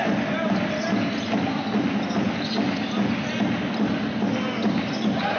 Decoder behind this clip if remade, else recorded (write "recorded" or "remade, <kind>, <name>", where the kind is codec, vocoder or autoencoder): recorded